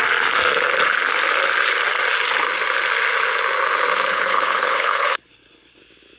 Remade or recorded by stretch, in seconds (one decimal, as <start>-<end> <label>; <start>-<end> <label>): 0.0-4.1 recorded; 4.1-5.8 remade; 5.8-6.2 recorded